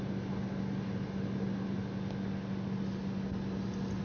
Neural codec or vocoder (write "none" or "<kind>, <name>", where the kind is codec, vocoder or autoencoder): none